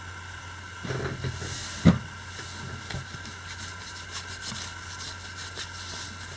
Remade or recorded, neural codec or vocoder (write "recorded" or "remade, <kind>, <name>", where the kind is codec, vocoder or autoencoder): recorded